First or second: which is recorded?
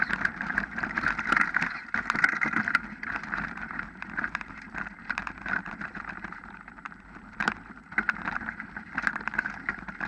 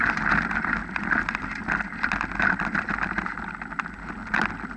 second